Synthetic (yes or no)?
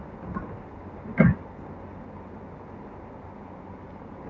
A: no